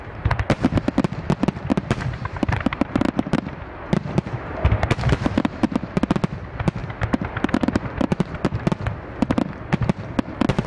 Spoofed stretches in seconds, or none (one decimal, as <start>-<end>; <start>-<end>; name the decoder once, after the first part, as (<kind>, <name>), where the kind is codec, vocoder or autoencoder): 1.7-6.0 (vocoder, BigVGAN v2); 6.8-8.3